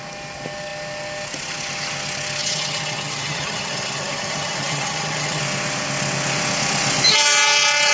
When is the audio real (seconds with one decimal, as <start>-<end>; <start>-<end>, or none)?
0.0-2.4; 5.4-7.9